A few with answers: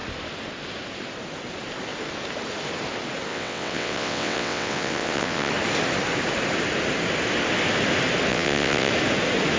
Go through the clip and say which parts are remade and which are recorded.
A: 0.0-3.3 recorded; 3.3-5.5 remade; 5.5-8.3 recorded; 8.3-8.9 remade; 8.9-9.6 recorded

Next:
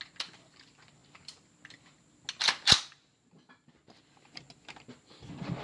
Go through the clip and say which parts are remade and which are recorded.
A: 0.0-5.6 recorded

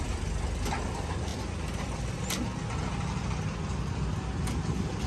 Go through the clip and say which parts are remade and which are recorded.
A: 0.0-1.3 remade; 1.3-4.4 recorded; 4.4-5.1 remade

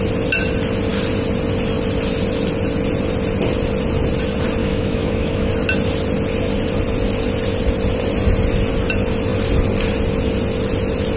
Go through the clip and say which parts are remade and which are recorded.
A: 0.0-4.6 recorded; 4.6-5.5 remade; 5.5-11.2 recorded